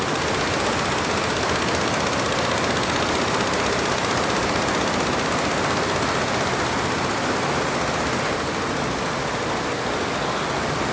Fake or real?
real